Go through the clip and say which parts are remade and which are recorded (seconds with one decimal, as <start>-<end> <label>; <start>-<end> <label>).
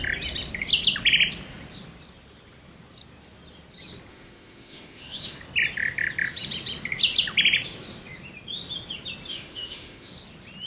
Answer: 0.0-4.1 recorded; 4.1-5.4 remade; 5.4-9.3 recorded; 9.3-10.1 remade; 10.1-10.7 recorded